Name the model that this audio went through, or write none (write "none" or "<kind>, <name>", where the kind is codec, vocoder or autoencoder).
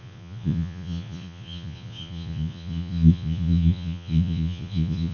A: vocoder, Vocos